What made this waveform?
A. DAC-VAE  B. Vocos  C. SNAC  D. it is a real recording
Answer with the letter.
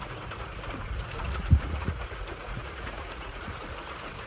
B